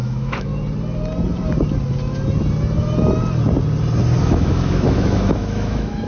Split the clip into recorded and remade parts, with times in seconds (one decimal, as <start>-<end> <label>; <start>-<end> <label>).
0.0-0.5 remade; 0.5-4.2 recorded; 4.2-6.1 remade